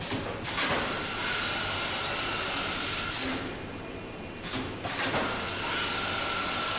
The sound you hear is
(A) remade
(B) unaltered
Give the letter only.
B